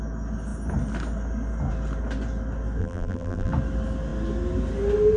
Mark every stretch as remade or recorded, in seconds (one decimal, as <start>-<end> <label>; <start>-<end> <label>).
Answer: 0.0-2.8 recorded; 2.8-3.5 remade; 3.5-5.2 recorded